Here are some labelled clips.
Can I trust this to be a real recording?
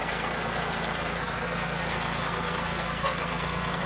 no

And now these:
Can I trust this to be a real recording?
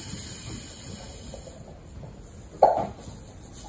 yes